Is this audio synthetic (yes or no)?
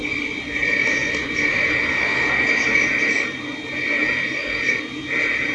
no